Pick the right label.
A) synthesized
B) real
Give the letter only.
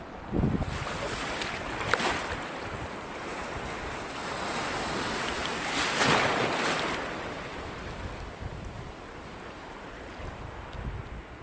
B